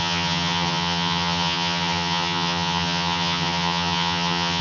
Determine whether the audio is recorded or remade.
remade